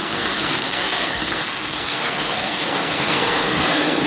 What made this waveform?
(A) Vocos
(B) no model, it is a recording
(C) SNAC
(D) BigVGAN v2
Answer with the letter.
C